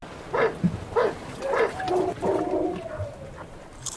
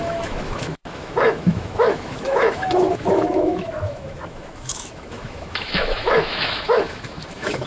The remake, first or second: second